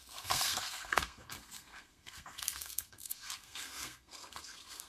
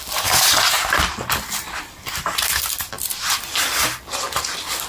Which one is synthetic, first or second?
first